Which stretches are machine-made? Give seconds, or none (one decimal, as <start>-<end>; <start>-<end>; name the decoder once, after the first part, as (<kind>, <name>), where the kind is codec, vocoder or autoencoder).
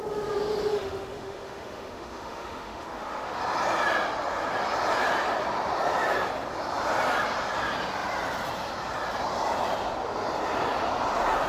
0.7-3.4 (autoencoder, DAC-VAE)